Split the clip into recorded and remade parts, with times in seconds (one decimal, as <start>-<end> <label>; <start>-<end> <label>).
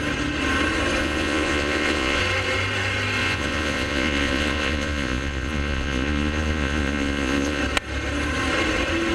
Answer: 0.0-1.0 recorded; 1.0-2.2 remade; 2.2-3.2 recorded; 3.2-7.6 remade; 7.6-9.1 recorded